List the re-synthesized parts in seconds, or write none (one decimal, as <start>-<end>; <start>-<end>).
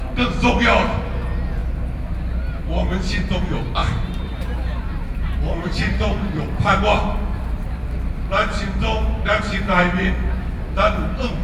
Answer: 3.8-6.8; 8.5-9.8